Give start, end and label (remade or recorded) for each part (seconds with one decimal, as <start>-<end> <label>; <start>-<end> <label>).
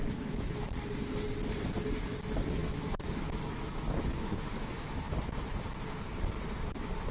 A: 0.0-0.7 remade; 0.7-2.6 recorded; 2.6-5.4 remade; 5.4-7.1 recorded